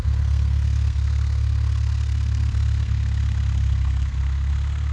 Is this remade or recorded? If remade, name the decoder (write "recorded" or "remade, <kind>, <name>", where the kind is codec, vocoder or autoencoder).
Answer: remade, codec, SNAC